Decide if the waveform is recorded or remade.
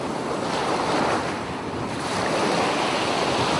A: recorded